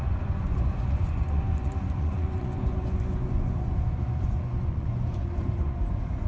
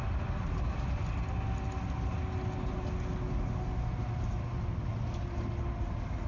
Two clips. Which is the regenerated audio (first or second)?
first